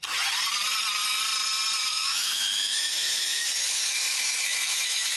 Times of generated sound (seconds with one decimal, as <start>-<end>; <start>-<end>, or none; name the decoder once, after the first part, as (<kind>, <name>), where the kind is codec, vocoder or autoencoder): 1.9-5.2 (autoencoder, DAC-VAE)